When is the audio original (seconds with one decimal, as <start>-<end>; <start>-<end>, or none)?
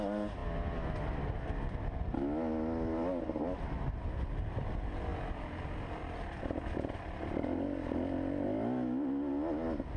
0.0-10.0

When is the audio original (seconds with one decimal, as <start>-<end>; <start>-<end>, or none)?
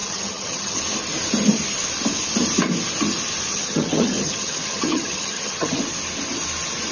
0.8-3.5; 5.8-6.9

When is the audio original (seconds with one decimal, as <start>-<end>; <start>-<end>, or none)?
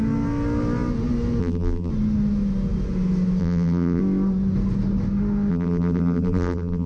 0.0-1.4; 1.9-3.4; 4.0-5.5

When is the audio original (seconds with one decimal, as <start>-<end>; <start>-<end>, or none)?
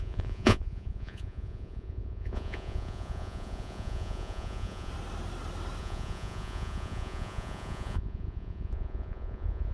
4.9-5.8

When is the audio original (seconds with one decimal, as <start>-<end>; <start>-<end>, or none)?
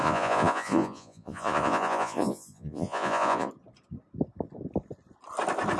3.5-5.8